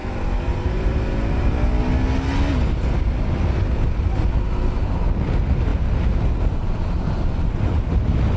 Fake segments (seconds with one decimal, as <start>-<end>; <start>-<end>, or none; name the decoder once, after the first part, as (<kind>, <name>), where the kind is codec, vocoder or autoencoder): 0.0-1.5 (vocoder, BigVGAN v2)